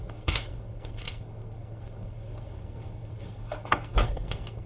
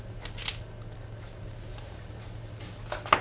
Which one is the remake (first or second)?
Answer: first